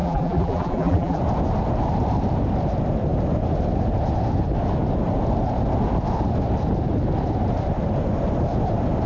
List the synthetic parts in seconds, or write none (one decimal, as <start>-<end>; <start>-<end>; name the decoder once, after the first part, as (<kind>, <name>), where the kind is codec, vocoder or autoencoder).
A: 0.0-1.2 (vocoder, BigVGAN v2)